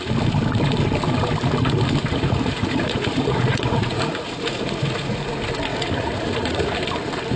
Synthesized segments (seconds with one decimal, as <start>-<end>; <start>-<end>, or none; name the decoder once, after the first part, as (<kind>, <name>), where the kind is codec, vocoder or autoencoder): 2.1-5.2 (vocoder, Vocos); 5.7-6.7